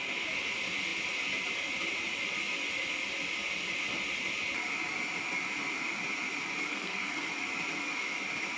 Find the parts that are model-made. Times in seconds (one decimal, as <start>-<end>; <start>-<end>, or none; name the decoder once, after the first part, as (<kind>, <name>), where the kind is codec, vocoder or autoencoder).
6.7-7.3 (codec, SNAC)